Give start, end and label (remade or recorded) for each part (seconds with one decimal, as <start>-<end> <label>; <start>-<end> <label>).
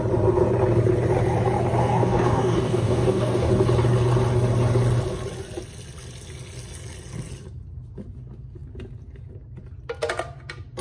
0.0-1.8 recorded; 1.8-3.5 remade; 3.5-10.8 recorded